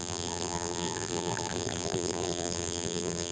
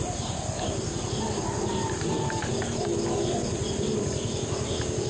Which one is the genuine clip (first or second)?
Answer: second